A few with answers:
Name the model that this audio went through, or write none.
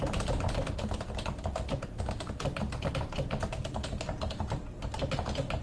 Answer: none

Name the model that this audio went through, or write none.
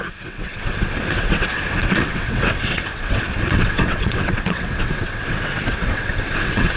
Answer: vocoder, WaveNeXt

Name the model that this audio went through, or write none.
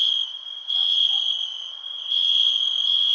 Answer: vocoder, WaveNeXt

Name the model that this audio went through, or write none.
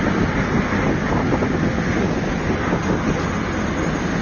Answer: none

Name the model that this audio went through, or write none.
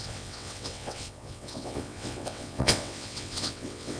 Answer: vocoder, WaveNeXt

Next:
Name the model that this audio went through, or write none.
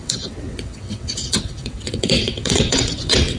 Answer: vocoder, WaveNeXt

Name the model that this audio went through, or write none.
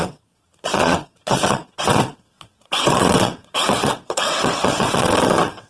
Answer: vocoder, WaveNeXt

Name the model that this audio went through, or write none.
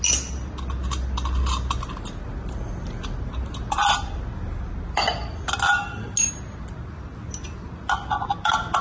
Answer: none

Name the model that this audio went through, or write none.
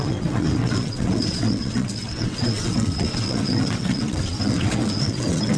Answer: vocoder, WaveNeXt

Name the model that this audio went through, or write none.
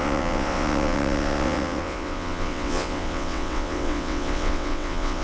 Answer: vocoder, WaveNeXt